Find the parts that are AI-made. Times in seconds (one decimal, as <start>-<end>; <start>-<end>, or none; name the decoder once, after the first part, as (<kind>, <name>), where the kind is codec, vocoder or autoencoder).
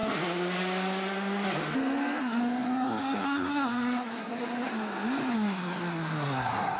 2.2-4.7 (codec, SNAC); 5.3-6.8